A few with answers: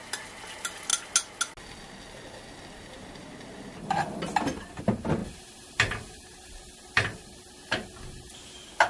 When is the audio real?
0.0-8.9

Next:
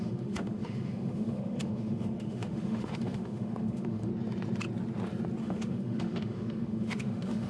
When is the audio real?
4.1-5.4

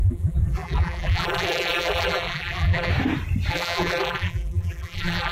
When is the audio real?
2.9-3.5

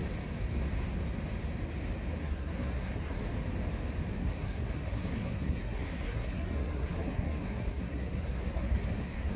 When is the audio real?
0.0-2.2; 3.2-4.1

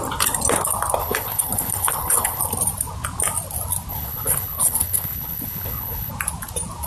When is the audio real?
0.0-1.0; 2.4-3.9; 6.1-6.9

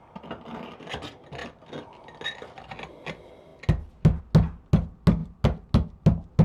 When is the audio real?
0.0-6.4